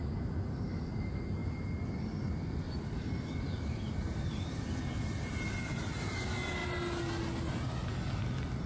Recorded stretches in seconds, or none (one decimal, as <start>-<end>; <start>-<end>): 0.0-8.7